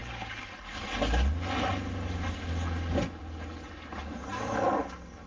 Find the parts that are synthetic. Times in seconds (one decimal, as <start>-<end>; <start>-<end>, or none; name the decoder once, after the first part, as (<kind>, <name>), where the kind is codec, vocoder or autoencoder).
none